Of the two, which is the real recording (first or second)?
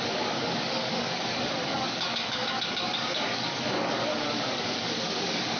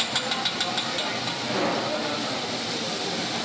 second